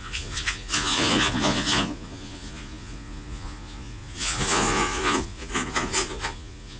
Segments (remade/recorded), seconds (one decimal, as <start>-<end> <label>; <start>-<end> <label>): 0.0-6.8 remade